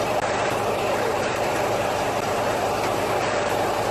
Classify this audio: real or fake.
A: fake